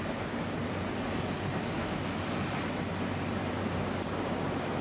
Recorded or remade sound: recorded